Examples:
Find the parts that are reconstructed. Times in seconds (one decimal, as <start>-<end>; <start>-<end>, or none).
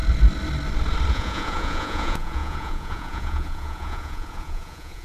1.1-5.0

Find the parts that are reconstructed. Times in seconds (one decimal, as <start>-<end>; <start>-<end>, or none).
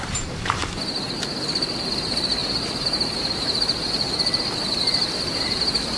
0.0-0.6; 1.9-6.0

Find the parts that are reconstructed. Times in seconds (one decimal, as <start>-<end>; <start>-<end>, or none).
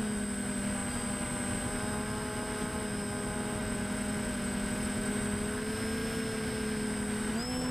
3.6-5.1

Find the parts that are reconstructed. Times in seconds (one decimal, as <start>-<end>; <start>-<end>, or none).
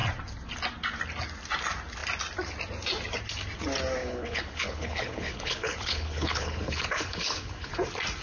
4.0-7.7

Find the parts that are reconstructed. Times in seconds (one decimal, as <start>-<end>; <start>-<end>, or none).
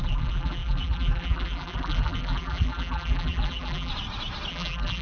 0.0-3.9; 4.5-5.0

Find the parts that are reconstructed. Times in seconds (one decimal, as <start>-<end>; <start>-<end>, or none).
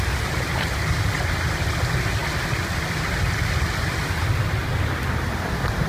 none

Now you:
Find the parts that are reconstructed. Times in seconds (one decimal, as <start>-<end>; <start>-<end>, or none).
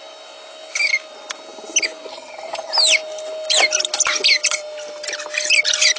2.1-2.7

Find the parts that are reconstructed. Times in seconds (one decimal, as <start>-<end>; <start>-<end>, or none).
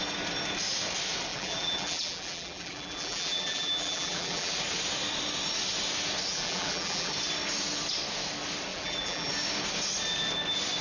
1.3-4.5; 6.3-7.1; 8.7-9.3